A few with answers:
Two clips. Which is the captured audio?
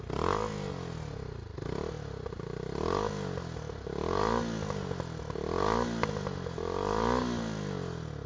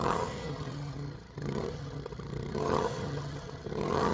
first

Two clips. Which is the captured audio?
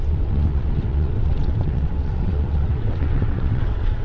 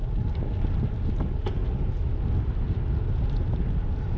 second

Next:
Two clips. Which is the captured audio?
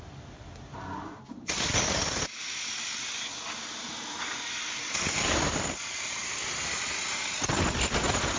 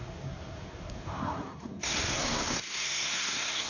first